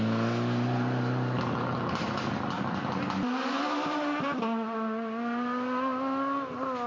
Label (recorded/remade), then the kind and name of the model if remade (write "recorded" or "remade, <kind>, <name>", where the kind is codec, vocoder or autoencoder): recorded